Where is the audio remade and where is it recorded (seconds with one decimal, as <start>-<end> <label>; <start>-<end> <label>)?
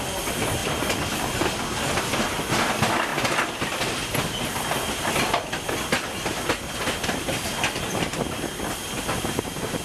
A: 0.0-9.8 recorded